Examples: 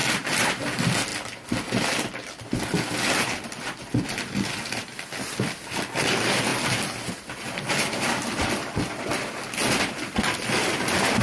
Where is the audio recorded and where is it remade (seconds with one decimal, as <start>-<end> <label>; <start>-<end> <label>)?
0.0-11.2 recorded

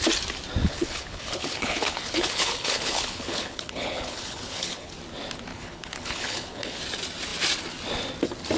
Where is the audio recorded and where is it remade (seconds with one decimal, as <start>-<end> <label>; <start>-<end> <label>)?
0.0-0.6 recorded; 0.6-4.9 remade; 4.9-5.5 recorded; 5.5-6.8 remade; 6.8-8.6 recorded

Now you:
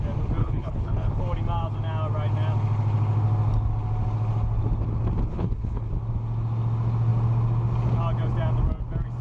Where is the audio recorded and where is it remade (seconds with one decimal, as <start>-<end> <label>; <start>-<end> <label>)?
0.0-0.4 recorded; 0.4-1.1 remade; 1.1-5.3 recorded; 5.3-5.9 remade; 5.9-9.2 recorded